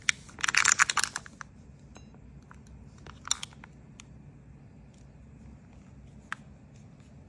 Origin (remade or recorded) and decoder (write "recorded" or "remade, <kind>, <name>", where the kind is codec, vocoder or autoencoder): recorded